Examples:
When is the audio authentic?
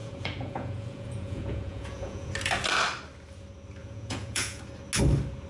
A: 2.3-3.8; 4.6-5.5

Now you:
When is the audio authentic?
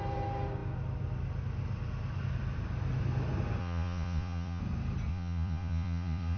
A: 0.0-3.6; 4.6-5.1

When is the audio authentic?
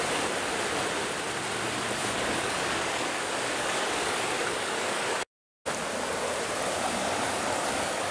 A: 0.0-2.0; 5.3-7.0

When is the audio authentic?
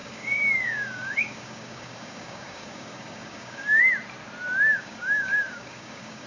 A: 3.8-4.7